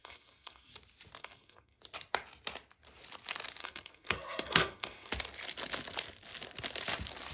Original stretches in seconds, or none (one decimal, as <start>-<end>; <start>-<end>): 0.7-1.2; 1.8-3.6; 5.1-7.3